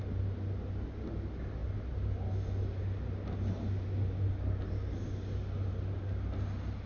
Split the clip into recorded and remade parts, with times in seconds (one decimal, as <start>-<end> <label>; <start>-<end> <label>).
0.0-6.9 recorded